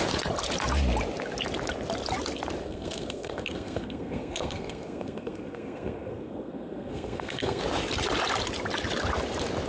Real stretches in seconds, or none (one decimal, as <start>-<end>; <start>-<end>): 0.0-2.6; 7.6-9.7